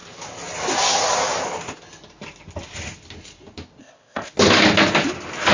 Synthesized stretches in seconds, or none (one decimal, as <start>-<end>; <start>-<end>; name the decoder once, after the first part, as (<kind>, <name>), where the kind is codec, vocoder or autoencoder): 3.8-4.3 (codec, ZipCodec)